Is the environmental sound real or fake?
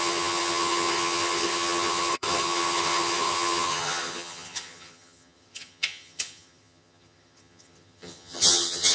fake